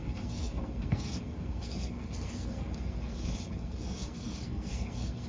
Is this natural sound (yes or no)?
no